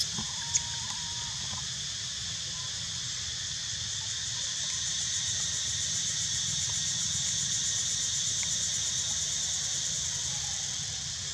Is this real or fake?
real